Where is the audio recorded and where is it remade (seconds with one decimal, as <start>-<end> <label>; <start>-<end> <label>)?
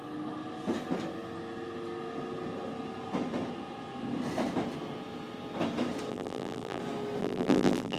0.0-6.1 recorded; 6.1-6.8 remade; 6.8-7.2 recorded; 7.2-8.0 remade